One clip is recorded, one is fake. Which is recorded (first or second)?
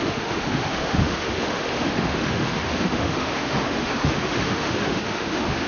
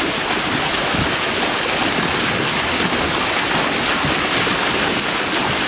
second